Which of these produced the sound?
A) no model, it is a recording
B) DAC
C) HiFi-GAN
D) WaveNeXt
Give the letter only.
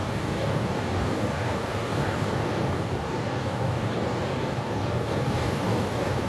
B